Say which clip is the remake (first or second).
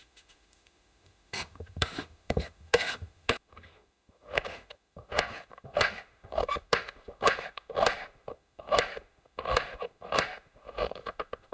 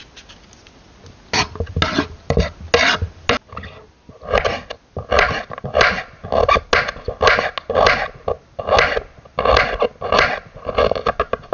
first